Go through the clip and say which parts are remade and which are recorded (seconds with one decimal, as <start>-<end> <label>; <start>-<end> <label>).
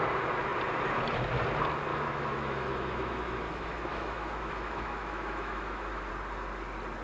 0.0-1.9 recorded; 1.9-6.1 remade; 6.1-7.0 recorded